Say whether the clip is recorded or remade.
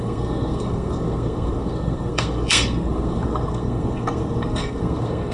remade